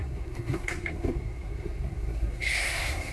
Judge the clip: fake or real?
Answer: fake